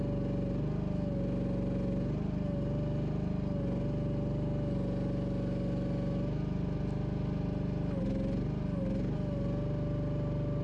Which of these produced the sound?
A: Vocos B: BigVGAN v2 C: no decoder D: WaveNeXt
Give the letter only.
C